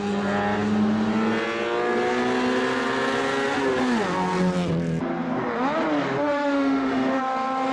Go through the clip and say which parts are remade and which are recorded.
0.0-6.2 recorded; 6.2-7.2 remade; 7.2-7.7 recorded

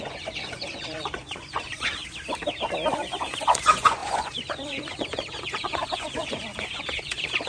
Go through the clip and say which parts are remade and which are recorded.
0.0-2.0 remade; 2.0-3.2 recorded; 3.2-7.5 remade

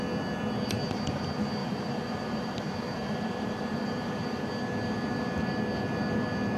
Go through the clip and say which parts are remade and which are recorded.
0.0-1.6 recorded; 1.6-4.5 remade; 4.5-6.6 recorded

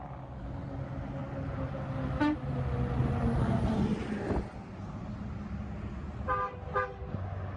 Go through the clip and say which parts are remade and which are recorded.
0.0-7.6 recorded

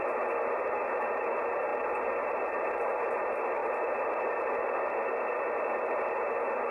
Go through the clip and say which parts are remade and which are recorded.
0.0-6.7 recorded

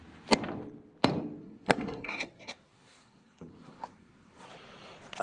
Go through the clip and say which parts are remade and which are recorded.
0.0-1.4 recorded; 1.4-4.5 remade; 4.5-5.2 recorded

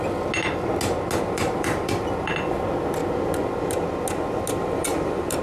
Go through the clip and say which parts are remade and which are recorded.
0.0-1.2 recorded; 1.2-3.0 remade; 3.0-4.8 recorded; 4.8-5.4 remade

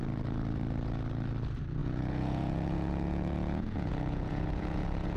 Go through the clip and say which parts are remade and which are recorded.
0.0-1.8 recorded; 1.8-5.2 remade